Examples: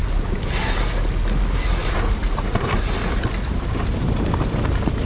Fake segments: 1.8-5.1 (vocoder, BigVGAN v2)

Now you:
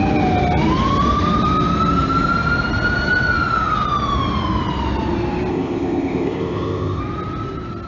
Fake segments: 5.5-7.0 (codec, ZipCodec)

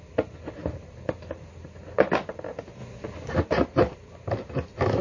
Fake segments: none

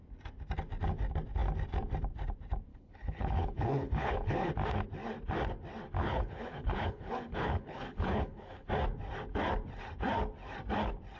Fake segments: 2.7-4.5 (codec, HILCodec); 6.0-8.7

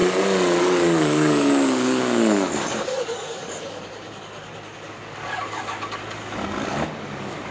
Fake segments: 0.6-7.5 (codec, DAC)

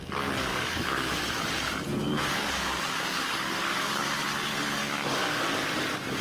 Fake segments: 0.5-1.2 (codec, DAC); 2.0-4.0; 4.8-5.7

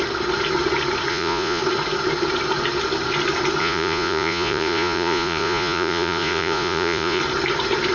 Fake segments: 1.1-1.6 (vocoder, Vocos); 3.6-7.2